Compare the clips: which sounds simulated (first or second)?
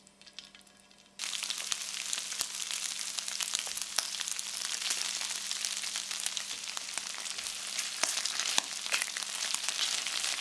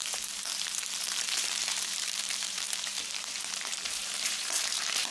second